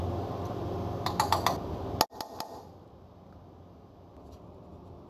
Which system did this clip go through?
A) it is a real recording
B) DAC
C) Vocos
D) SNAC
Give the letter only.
A